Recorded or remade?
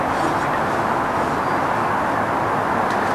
recorded